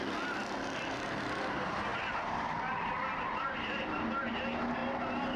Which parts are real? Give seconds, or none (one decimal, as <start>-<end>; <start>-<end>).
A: 0.0-1.9; 4.3-5.4